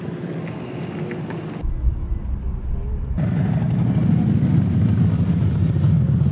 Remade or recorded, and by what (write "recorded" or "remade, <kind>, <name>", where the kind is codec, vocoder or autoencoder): recorded